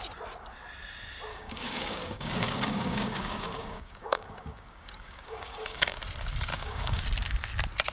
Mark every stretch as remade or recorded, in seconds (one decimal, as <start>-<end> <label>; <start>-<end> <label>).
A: 0.0-1.3 recorded; 1.3-6.0 remade; 6.0-6.5 recorded; 6.5-7.0 remade; 7.0-7.9 recorded